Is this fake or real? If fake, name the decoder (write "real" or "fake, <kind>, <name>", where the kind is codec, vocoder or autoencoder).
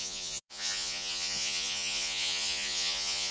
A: fake, vocoder, Vocos